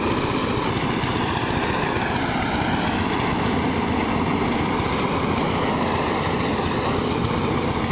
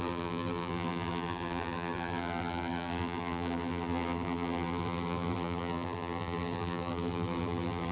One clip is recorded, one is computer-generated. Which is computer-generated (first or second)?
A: second